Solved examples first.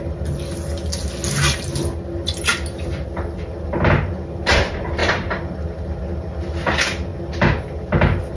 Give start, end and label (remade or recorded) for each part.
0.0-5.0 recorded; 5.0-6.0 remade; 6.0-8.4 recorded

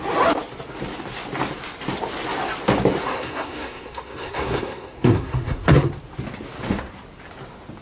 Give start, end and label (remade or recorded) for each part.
0.0-3.0 recorded; 3.0-5.9 remade; 5.9-7.8 recorded

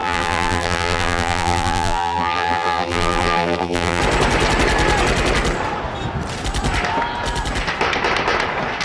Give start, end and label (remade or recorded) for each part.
0.0-4.0 remade; 4.0-8.8 recorded

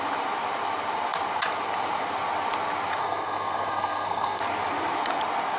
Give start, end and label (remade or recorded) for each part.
0.0-3.0 recorded; 3.0-4.4 remade; 4.4-5.6 recorded